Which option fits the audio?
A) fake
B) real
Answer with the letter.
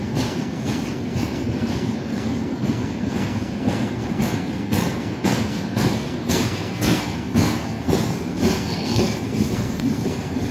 A